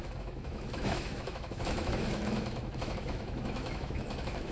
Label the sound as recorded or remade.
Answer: remade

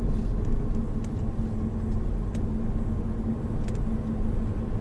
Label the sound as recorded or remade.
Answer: recorded